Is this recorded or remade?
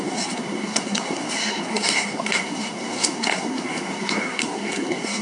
remade